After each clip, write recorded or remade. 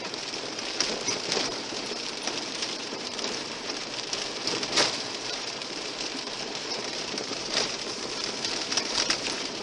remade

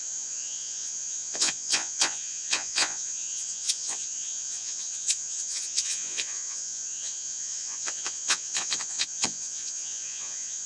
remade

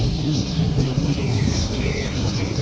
remade